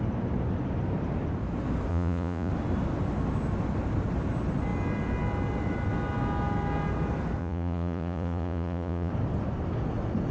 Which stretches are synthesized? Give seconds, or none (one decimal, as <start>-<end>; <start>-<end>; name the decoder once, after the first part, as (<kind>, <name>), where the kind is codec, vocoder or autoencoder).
1.9-2.5 (vocoder, Vocos); 7.4-9.1